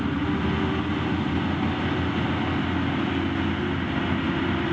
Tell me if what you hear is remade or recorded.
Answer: recorded